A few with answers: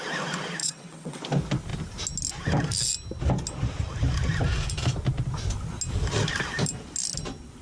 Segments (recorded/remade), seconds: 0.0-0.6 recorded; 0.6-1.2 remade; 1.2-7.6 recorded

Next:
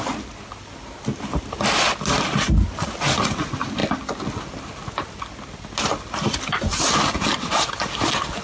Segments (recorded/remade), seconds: 0.0-8.4 recorded

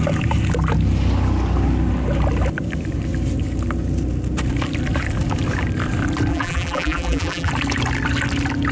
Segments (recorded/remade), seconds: 0.0-6.3 recorded; 6.3-7.5 remade; 7.5-8.7 recorded

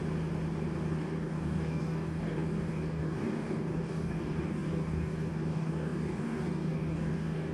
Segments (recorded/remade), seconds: 0.0-0.9 recorded; 0.9-7.5 remade

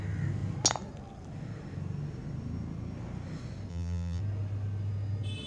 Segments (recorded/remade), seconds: 0.0-3.7 recorded; 3.7-4.2 remade; 4.2-5.5 recorded

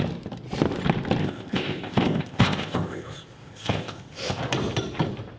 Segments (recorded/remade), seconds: 0.0-1.2 recorded; 1.2-4.4 remade; 4.4-5.4 recorded

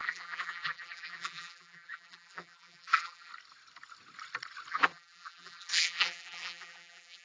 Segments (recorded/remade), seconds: 0.0-3.3 remade; 3.3-4.7 recorded; 4.7-7.2 remade